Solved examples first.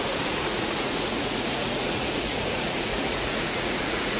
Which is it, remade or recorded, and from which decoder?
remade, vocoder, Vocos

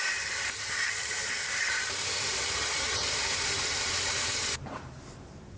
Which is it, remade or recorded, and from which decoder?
remade, vocoder, BigVGAN v2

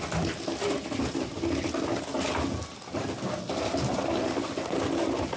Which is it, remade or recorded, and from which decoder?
recorded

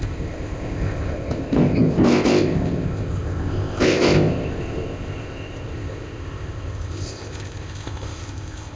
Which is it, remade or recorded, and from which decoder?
remade, codec, ZipCodec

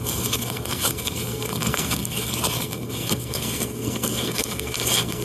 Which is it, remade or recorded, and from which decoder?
remade, codec, SNAC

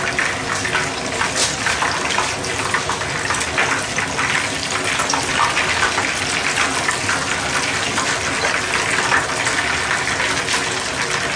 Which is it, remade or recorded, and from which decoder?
recorded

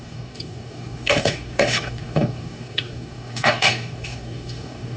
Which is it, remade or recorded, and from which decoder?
remade, codec, DAC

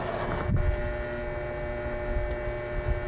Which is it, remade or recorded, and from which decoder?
recorded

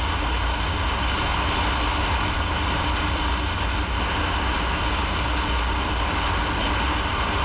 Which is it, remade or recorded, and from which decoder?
recorded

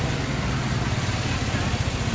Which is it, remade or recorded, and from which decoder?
recorded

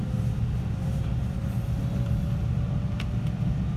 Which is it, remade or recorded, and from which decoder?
recorded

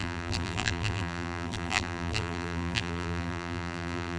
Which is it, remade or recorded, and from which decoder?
remade, vocoder, BigVGAN v2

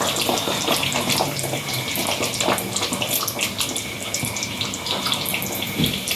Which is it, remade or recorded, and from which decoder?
remade, vocoder, BigVGAN v2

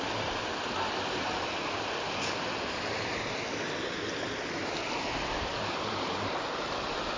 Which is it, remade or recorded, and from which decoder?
recorded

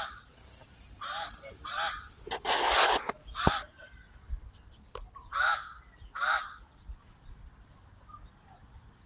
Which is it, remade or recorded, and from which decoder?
recorded